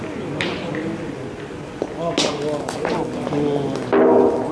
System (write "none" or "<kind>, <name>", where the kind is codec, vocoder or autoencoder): none